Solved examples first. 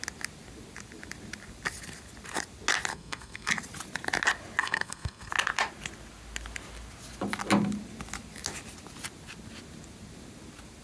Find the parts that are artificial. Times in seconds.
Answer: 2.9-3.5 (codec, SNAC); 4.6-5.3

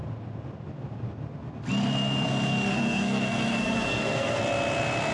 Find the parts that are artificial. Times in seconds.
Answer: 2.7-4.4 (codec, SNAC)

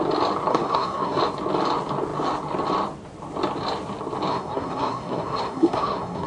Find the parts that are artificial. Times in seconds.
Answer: 0.5-1.2 (codec, SNAC); 4.3-6.3

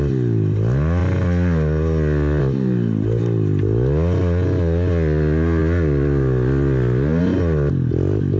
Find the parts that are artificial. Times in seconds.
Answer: none